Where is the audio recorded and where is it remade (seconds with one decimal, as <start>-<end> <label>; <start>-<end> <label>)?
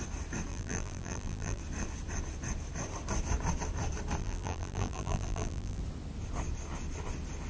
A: 0.0-0.5 recorded; 0.5-1.6 remade; 1.6-4.2 recorded; 4.2-5.8 remade; 5.8-7.5 recorded